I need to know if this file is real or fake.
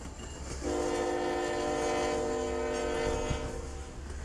real